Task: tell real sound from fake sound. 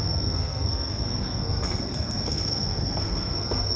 fake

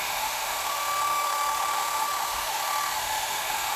fake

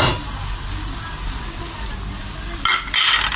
real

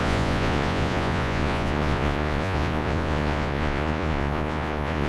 fake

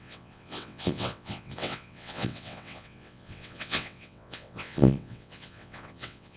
fake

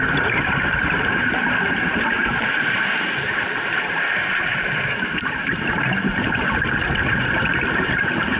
fake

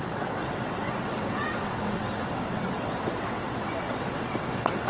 fake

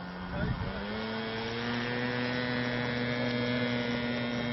real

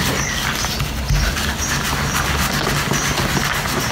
real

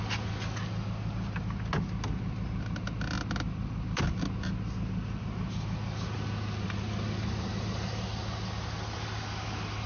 real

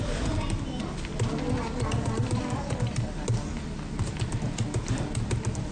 real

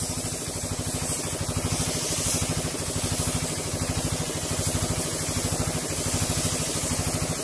real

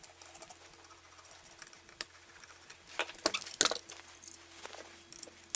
real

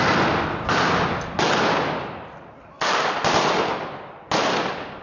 real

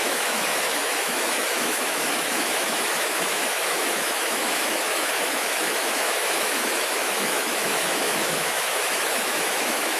fake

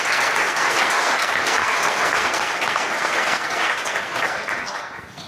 fake